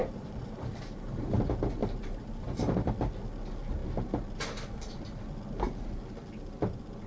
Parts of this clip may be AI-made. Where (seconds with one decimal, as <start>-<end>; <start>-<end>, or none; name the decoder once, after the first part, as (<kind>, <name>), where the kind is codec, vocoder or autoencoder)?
0.0-1.4 (vocoder, BigVGAN v2); 1.8-2.9

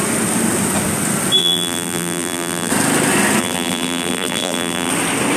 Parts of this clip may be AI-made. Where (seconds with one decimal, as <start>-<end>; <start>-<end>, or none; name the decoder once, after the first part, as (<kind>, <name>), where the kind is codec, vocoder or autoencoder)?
1.4-2.7 (vocoder, BigVGAN v2); 3.4-4.9

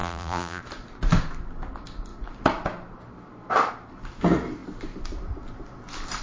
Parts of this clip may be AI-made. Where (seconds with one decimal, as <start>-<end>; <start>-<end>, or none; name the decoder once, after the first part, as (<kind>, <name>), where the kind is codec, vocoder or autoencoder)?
0.0-0.6 (vocoder, BigVGAN v2)